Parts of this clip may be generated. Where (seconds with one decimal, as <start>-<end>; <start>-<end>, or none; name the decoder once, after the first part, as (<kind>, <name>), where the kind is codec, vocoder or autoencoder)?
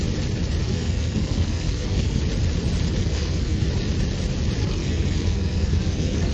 0.6-2.2 (codec, SNAC); 3.0-3.7; 4.6-6.3